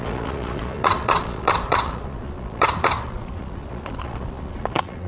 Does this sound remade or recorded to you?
remade